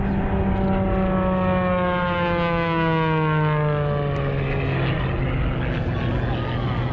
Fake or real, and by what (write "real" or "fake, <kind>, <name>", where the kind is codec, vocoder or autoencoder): real